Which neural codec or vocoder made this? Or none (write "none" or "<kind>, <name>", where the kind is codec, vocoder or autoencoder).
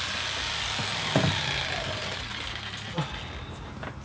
none